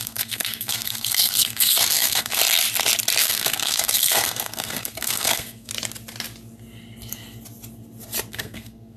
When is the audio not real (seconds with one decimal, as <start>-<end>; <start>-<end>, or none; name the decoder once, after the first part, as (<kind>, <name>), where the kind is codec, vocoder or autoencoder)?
0.0-2.4 (codec, SNAC); 3.2-5.7; 8.3-9.0